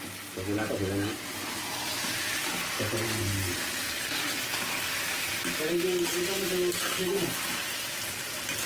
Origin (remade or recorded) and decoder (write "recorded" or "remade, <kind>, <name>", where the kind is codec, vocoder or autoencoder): recorded